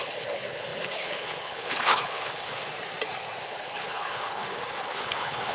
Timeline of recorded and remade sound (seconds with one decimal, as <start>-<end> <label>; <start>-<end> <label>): 0.0-2.7 remade; 2.7-3.4 recorded; 3.4-5.5 remade